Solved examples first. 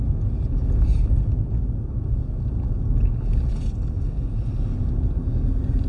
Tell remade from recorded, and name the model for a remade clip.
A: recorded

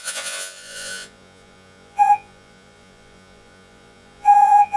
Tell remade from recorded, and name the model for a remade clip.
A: remade, vocoder, Vocos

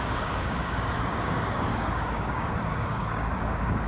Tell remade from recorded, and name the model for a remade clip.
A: remade, codec, DAC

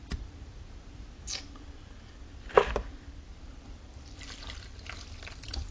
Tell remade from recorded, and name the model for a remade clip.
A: remade, vocoder, BigVGAN v2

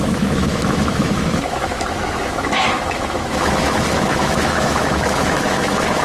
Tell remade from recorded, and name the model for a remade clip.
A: remade, autoencoder, DAC-VAE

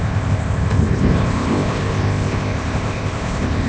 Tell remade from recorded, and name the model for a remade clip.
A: remade, codec, ZipCodec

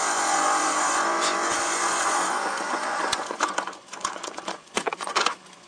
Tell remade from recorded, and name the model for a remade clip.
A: remade, vocoder, Vocos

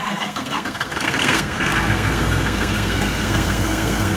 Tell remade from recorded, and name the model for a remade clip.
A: remade, codec, SNAC